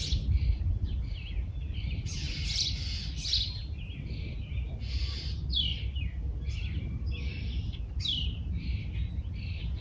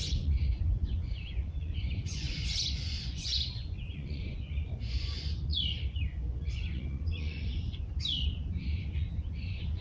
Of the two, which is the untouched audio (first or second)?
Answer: first